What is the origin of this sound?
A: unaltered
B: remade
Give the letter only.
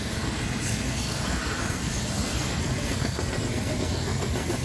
B